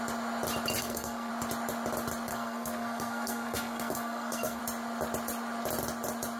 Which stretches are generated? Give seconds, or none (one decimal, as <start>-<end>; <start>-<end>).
0.8-1.3; 2.3-4.6